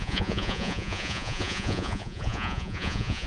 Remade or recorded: remade